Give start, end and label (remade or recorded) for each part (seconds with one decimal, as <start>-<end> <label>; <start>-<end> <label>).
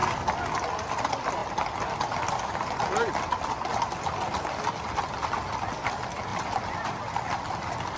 0.0-6.3 recorded; 6.3-6.9 remade; 6.9-8.0 recorded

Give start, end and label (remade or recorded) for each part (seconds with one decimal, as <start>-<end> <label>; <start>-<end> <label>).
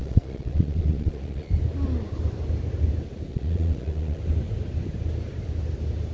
0.0-1.5 remade; 1.5-3.3 recorded; 3.3-4.2 remade; 4.2-6.1 recorded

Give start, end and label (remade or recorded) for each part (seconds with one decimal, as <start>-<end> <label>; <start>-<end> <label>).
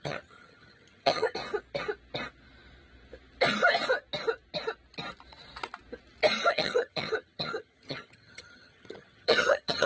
0.0-1.4 remade; 1.4-6.5 recorded; 6.5-9.9 remade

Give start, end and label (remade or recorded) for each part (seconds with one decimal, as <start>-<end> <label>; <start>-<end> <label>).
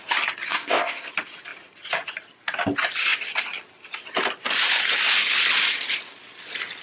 0.0-0.5 recorded; 0.5-1.1 remade; 1.1-6.8 recorded